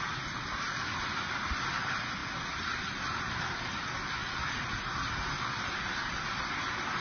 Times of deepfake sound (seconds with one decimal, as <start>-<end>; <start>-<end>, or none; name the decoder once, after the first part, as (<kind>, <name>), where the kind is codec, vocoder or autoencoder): none